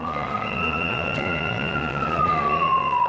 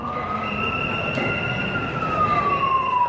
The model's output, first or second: first